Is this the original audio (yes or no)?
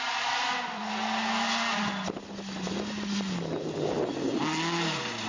yes